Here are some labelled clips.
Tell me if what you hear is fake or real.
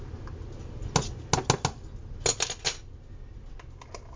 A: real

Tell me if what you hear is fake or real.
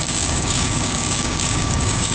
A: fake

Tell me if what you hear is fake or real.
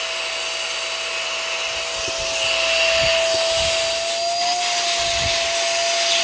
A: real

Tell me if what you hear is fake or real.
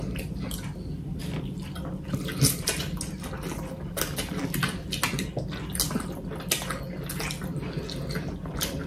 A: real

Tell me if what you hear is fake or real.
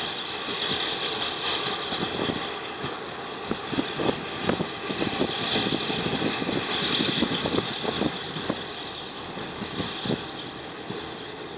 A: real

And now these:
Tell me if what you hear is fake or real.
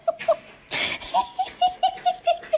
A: real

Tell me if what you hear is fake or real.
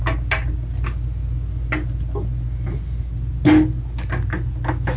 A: real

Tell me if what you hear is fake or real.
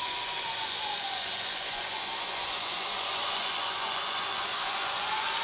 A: fake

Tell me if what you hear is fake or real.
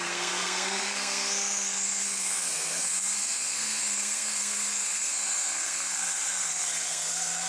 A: fake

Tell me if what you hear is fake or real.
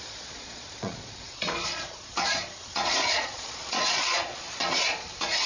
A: fake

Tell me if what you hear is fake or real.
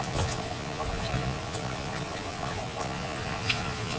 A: fake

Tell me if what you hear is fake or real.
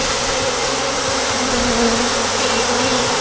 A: real